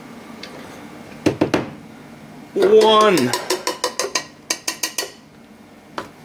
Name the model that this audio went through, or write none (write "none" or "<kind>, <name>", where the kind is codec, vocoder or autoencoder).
none